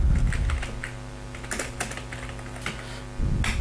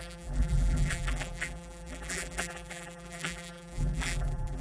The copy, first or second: second